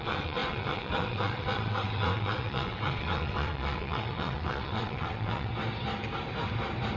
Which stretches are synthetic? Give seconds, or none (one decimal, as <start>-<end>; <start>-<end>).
0.0-5.5